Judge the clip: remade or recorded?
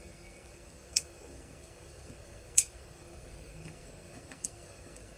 remade